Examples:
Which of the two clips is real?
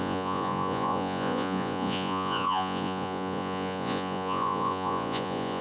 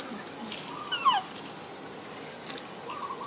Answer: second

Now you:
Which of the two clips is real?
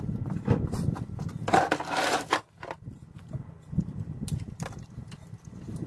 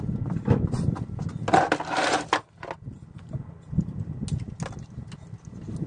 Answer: second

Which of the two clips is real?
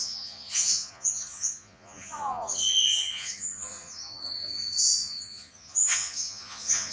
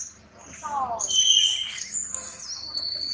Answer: second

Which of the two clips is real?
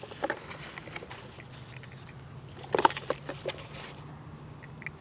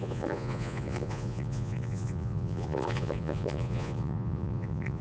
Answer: first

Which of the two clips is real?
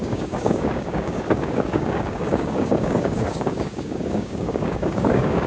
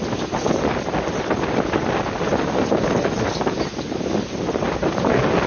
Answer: second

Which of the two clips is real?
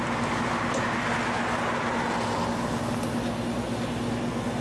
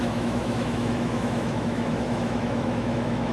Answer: first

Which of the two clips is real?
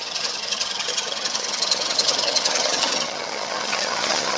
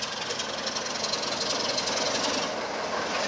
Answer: second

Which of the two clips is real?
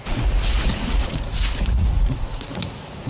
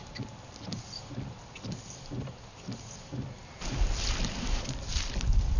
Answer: second